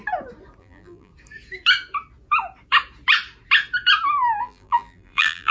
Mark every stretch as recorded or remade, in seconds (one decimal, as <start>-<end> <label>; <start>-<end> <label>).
0.0-0.6 recorded; 0.6-1.1 remade; 1.1-4.4 recorded; 4.4-5.5 remade